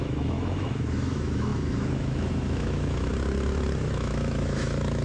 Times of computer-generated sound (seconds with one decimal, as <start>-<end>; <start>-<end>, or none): 0.0-3.1; 3.9-5.0